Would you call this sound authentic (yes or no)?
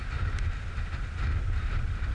yes